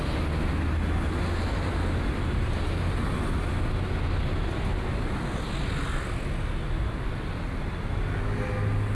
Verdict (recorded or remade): recorded